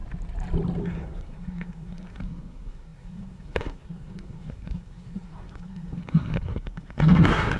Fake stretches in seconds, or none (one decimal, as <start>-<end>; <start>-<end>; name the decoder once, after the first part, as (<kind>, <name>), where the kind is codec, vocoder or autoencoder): 0.8-7.6 (codec, SNAC)

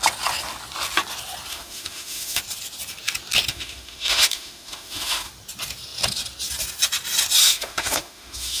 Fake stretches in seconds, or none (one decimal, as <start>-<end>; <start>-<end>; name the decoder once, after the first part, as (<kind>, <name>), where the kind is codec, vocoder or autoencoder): 1.5-2.4 (autoencoder, DAC-VAE); 3.5-5.3; 7.4-8.6

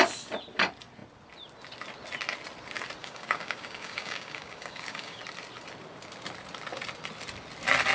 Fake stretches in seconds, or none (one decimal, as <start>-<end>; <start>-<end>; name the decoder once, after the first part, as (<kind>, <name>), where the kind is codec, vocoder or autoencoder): 3.0-5.2 (codec, DAC)

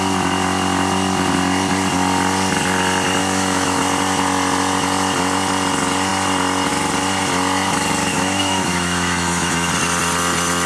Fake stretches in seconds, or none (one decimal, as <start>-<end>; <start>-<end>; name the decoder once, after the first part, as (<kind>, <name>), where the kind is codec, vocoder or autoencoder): 3.2-3.8 (autoencoder, DAC-VAE); 8.1-9.7